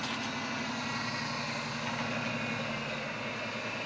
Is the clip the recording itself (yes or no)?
yes